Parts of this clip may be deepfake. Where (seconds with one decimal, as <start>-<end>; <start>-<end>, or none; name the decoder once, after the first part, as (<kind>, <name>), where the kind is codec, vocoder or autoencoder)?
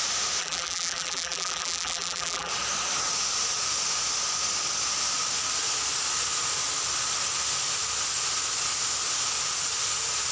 0.4-2.5 (vocoder, BigVGAN v2)